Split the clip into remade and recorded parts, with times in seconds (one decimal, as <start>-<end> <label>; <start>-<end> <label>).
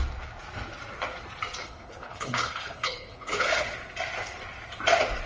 0.0-1.6 recorded; 1.6-3.7 remade; 3.7-5.3 recorded